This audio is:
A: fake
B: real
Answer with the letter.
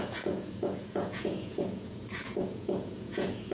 A